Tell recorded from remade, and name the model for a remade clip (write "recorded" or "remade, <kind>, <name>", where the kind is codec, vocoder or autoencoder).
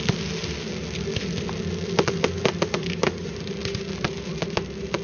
recorded